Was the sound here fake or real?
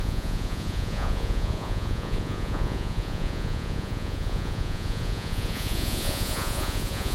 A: fake